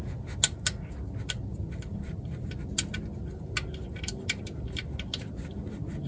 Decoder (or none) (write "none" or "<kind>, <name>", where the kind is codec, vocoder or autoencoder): none